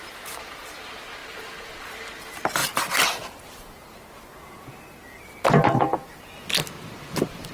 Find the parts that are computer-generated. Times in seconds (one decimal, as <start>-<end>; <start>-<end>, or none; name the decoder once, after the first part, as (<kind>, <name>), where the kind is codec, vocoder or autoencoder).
none